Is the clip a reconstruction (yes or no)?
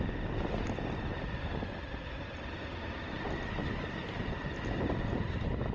no